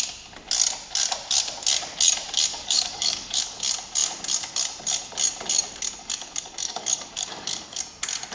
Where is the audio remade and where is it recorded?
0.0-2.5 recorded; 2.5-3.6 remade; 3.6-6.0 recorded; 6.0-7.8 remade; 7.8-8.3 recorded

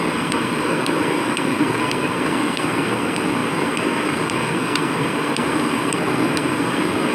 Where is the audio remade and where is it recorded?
0.0-7.1 remade

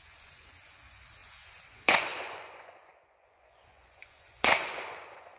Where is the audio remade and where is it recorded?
0.0-5.4 remade

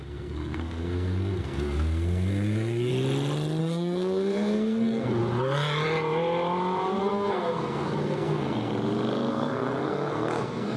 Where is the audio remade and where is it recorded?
0.0-2.9 remade; 2.9-3.6 recorded; 3.6-5.2 remade; 5.2-7.0 recorded; 7.0-8.7 remade; 8.7-9.3 recorded; 9.3-10.8 remade

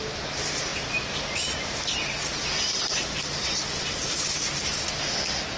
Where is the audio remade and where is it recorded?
0.0-5.6 recorded

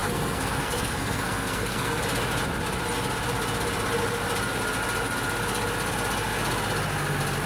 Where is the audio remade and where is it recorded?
0.0-2.0 remade; 2.0-7.5 recorded

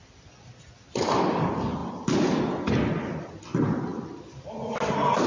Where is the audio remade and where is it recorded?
0.0-5.3 recorded